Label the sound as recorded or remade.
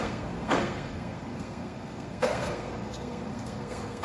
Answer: remade